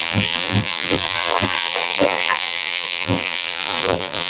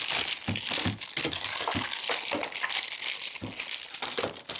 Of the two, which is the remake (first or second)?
first